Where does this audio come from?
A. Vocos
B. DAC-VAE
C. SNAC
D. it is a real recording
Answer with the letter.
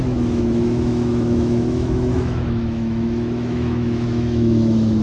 B